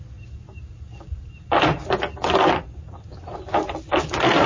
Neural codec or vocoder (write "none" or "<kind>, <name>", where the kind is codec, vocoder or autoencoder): none